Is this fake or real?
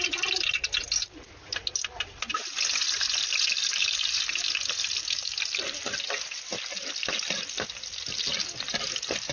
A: real